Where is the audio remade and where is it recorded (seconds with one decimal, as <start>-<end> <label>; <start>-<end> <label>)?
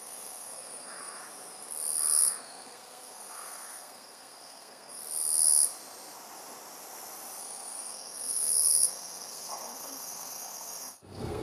0.0-1.2 remade; 1.2-2.2 recorded; 2.2-5.0 remade; 5.0-7.4 recorded; 7.4-11.4 remade